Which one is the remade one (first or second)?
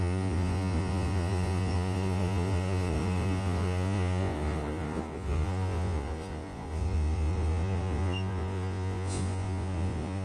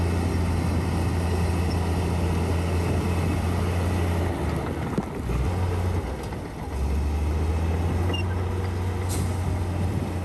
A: first